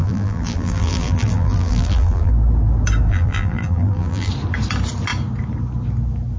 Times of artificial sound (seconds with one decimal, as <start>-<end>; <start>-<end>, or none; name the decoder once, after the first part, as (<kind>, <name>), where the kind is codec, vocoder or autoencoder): 0.0-2.3 (vocoder, BigVGAN v2); 3.1-4.3